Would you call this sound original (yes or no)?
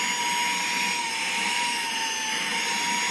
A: yes